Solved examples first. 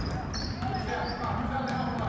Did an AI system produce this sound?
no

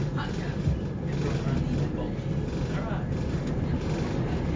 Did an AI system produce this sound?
no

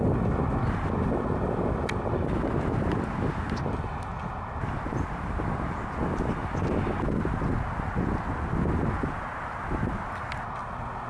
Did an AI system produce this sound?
no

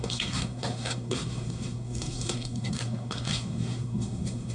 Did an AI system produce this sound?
yes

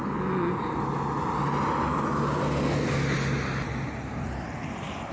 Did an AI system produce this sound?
no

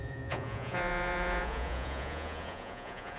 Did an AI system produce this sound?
yes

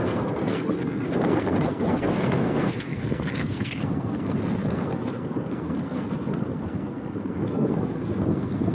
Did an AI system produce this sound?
yes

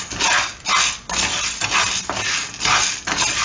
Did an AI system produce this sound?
no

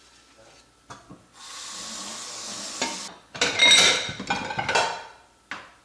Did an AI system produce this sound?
no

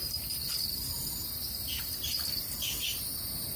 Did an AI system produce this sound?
no